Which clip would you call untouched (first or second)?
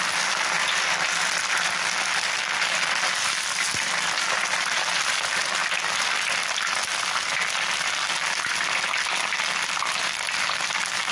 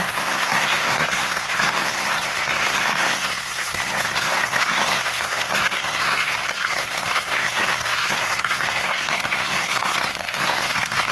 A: first